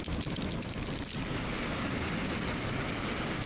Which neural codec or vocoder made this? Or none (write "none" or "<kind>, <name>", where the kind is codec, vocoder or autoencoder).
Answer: none